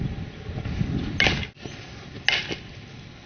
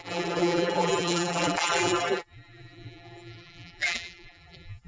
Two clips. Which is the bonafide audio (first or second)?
first